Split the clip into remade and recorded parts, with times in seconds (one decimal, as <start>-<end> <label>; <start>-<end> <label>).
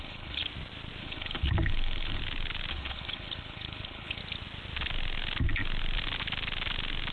0.0-0.4 remade; 0.4-1.0 recorded; 1.0-2.2 remade; 2.2-2.7 recorded; 2.7-4.2 remade; 4.2-7.1 recorded